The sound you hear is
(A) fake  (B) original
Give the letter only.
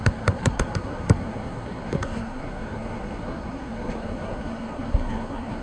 A